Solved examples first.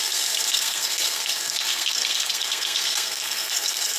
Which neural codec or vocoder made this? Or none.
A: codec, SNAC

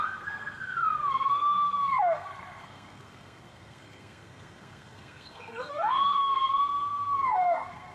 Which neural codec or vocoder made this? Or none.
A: codec, SNAC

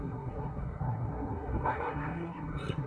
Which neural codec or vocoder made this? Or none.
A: codec, SNAC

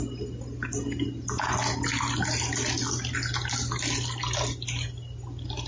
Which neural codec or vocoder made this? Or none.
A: none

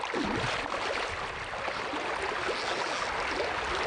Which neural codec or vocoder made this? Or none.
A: none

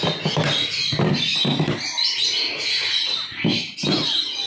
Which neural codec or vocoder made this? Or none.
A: none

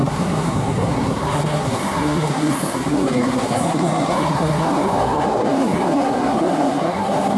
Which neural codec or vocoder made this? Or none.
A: codec, SNAC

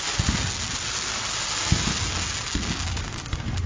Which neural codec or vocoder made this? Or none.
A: none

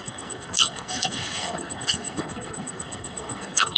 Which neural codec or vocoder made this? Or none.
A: codec, SNAC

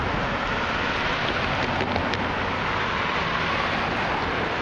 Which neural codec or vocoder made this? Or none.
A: none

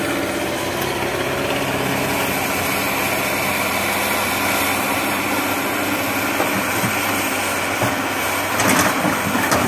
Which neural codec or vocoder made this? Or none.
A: none